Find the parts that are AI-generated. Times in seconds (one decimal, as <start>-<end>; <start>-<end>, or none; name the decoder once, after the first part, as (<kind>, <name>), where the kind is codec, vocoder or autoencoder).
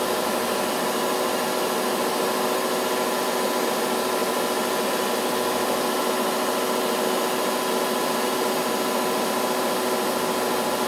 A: none